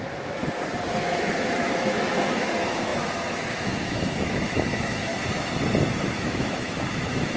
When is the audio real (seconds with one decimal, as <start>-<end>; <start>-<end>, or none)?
0.4-1.0; 5.1-5.9